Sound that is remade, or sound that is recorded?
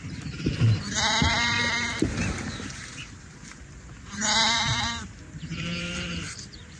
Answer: remade